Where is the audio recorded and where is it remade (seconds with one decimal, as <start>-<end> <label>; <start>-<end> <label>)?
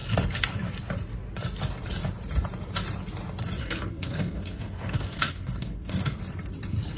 0.0-3.6 recorded; 3.6-6.2 remade; 6.2-7.0 recorded